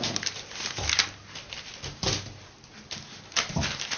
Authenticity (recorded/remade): recorded